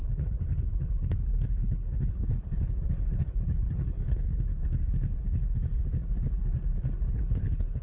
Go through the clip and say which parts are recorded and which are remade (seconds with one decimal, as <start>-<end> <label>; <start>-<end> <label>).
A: 0.0-4.5 remade; 4.5-7.1 recorded; 7.1-7.8 remade